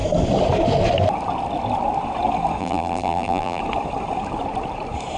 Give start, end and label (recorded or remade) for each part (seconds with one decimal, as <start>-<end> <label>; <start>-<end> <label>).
0.0-2.6 recorded; 2.6-3.6 remade; 3.6-5.2 recorded